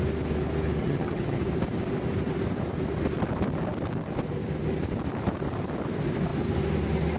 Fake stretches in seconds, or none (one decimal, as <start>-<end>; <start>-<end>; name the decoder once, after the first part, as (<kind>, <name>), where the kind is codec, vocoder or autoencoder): 0.8-1.4 (vocoder, HiFi-GAN)